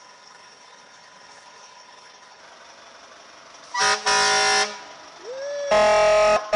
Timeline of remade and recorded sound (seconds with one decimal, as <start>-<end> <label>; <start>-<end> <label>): 0.0-2.4 remade; 2.4-6.6 recorded